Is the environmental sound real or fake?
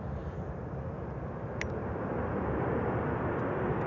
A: real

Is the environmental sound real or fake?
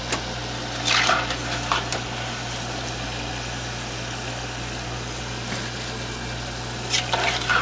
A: real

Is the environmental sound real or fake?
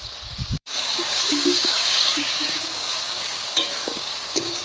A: fake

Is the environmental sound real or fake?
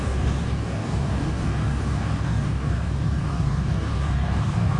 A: fake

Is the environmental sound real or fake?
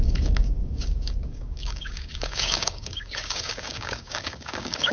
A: fake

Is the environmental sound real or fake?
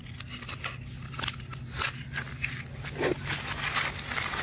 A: real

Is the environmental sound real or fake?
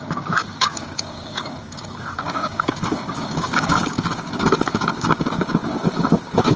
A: fake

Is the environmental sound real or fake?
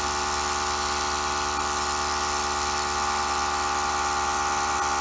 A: real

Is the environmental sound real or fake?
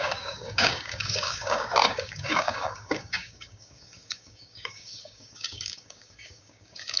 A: fake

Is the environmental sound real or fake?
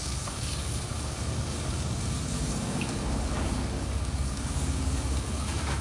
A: fake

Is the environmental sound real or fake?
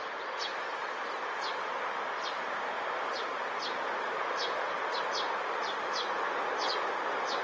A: real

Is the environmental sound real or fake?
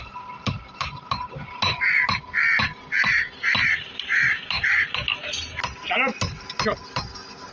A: real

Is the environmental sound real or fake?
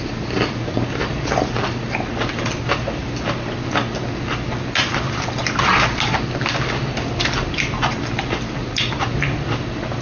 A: real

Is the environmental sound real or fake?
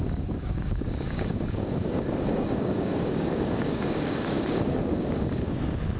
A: fake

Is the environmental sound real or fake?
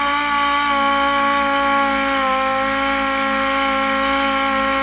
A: real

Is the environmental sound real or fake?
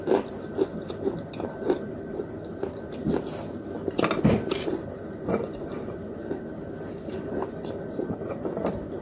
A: real